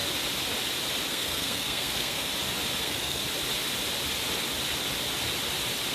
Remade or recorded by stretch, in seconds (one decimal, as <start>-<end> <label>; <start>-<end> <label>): 0.0-1.1 recorded; 1.1-2.3 remade; 2.3-2.8 recorded; 2.8-3.2 remade; 3.2-5.9 recorded